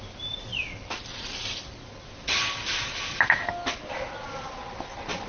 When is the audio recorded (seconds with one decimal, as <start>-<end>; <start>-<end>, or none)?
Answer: 0.0-5.3